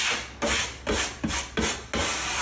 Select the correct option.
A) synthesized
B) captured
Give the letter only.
B